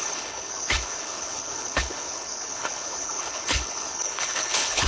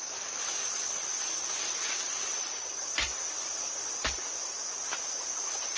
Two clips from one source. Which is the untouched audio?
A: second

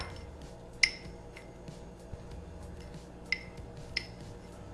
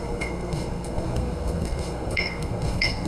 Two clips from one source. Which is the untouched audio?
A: first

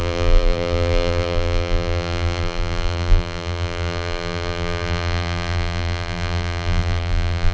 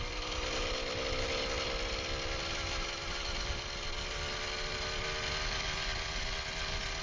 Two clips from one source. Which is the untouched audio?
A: second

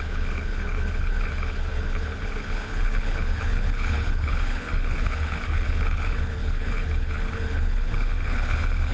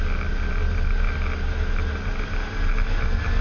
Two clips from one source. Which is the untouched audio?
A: second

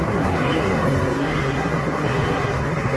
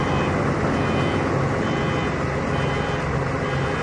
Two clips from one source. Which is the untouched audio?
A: second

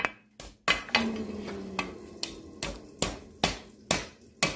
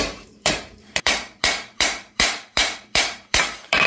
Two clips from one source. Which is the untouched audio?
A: first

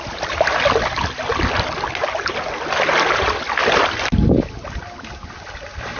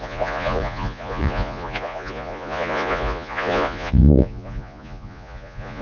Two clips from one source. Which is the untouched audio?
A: first